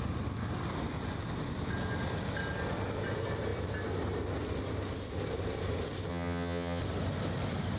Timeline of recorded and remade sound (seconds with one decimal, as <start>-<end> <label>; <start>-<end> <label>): 0.0-6.1 recorded; 6.1-6.8 remade; 6.8-7.8 recorded